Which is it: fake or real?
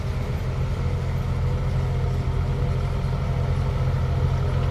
real